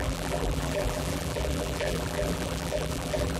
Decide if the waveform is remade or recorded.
remade